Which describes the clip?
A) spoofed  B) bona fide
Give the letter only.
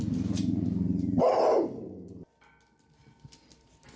B